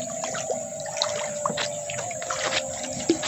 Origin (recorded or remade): recorded